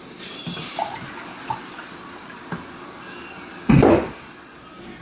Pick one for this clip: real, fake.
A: real